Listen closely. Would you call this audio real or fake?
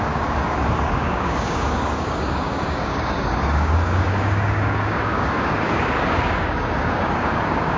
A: fake